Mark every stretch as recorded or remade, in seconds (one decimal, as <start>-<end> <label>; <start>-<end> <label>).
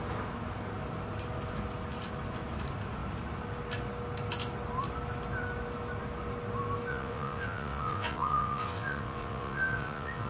0.0-6.9 recorded; 6.9-10.3 remade